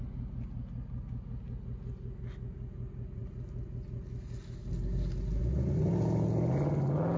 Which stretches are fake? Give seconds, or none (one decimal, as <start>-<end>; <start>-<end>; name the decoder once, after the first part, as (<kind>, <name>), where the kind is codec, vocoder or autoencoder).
none